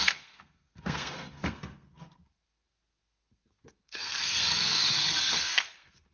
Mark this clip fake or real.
fake